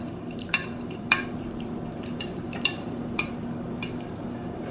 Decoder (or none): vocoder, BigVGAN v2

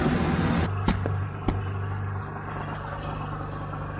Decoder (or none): none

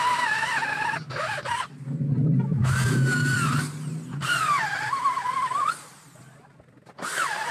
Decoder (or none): none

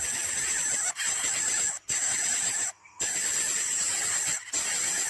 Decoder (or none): none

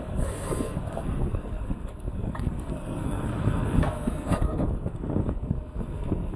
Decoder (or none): codec, SNAC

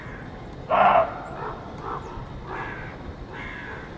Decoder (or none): none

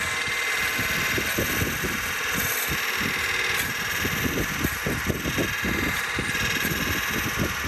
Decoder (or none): none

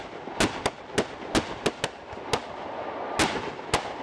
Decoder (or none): none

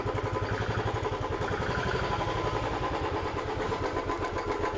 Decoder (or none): none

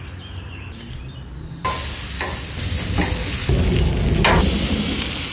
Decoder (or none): none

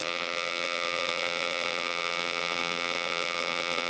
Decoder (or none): vocoder, BigVGAN v2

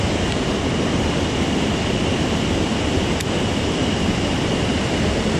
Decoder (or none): none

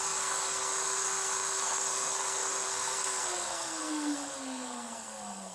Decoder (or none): codec, SNAC